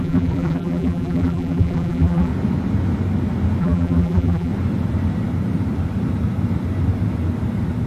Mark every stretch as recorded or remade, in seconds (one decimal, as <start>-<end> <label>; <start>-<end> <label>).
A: 0.0-2.3 remade; 2.3-3.6 recorded; 3.6-4.5 remade; 4.5-7.9 recorded